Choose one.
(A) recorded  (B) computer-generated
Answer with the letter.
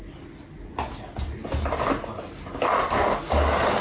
A